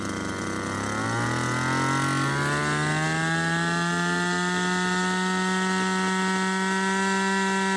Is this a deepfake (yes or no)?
no